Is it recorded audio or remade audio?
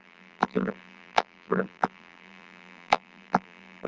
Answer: remade